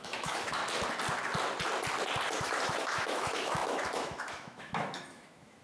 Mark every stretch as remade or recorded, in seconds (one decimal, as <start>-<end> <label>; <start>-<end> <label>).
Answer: 0.0-0.6 remade; 0.6-2.4 recorded; 2.4-5.6 remade